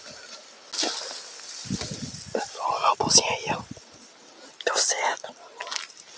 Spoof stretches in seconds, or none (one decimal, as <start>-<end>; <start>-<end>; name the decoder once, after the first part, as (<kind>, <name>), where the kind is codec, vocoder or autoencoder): none